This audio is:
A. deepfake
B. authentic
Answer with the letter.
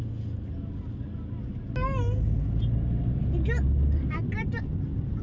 B